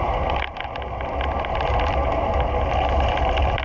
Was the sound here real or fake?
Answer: real